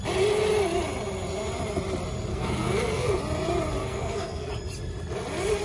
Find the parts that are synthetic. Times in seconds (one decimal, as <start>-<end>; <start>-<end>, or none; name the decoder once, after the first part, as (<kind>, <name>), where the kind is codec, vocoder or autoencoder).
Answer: 2.3-3.2 (codec, SNAC); 3.8-4.5